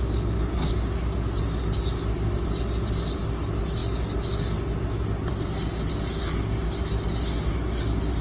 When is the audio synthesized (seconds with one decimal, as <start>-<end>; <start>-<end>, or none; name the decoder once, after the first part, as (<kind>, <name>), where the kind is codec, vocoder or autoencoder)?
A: none